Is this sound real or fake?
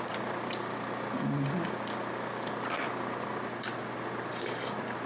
real